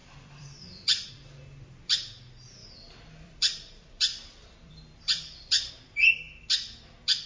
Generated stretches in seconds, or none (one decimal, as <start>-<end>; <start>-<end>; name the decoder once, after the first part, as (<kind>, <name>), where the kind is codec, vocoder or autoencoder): 0.0-1.1 (vocoder, BigVGAN v2); 2.6-5.7

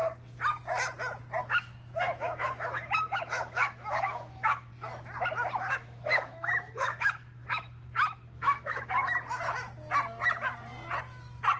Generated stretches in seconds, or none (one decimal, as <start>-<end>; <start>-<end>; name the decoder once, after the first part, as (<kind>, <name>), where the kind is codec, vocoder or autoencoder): 1.4-4.7 (autoencoder, DAC-VAE); 5.7-9.0

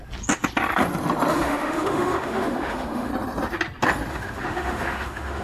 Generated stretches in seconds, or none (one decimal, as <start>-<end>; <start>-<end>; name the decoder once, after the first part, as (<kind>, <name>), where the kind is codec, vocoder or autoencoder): 1.3-3.1 (autoencoder, DAC-VAE); 4.1-5.4

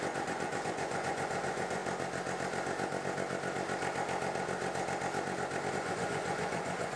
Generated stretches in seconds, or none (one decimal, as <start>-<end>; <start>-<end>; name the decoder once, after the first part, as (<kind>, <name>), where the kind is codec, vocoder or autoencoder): 0.0-1.8 (vocoder, Vocos); 5.7-7.0

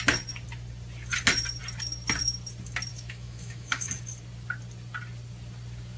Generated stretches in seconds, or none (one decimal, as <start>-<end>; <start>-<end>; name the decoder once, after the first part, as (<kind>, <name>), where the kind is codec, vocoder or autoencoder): 2.9-3.9 (autoencoder, DAC-VAE)

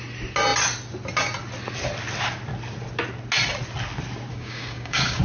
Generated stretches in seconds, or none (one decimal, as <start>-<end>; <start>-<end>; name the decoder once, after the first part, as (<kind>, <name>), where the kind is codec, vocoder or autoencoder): 4.3-5.2 (codec, DAC)

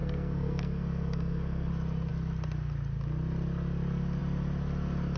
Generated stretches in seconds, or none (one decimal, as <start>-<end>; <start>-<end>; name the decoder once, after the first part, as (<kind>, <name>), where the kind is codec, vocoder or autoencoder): 0.0-1.7 (codec, SNAC)

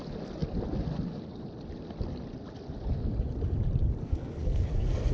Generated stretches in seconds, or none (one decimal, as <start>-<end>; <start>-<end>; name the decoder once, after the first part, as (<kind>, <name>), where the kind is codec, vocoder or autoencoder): 4.0-5.1 (codec, SNAC)